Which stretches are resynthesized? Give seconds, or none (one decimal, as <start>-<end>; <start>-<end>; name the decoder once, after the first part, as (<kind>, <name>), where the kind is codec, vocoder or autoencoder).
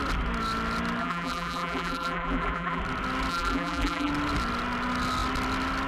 1.0-2.8 (vocoder, BigVGAN v2); 3.3-4.1